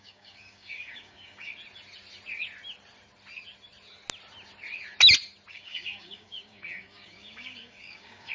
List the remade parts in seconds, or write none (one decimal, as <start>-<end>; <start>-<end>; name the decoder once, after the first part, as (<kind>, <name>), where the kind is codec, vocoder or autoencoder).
0.0-1.5 (codec, DAC); 5.5-8.3